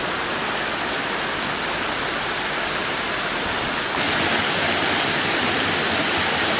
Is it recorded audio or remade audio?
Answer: recorded